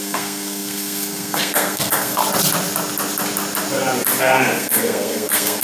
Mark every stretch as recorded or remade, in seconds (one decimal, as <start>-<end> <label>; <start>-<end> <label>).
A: 0.0-2.2 remade; 2.2-4.2 recorded; 4.2-5.6 remade